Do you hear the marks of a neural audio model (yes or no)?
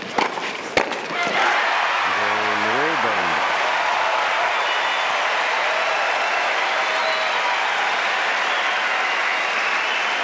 no